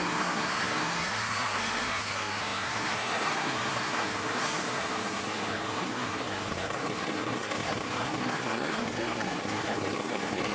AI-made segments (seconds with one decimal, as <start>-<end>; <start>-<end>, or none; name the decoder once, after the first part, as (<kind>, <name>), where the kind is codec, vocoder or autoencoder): 0.0-10.5 (codec, SNAC)